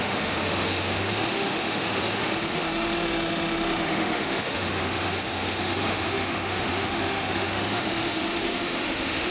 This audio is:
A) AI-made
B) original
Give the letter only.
A